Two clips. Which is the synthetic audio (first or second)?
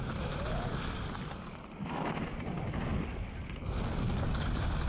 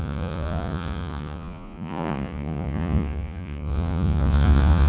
second